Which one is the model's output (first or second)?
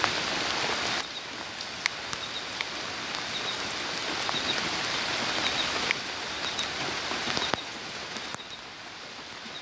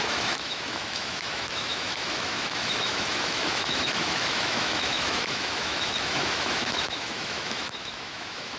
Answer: second